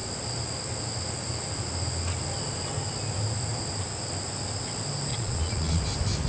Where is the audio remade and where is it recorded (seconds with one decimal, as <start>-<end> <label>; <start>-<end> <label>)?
0.0-5.1 recorded; 5.1-5.8 remade; 5.8-6.3 recorded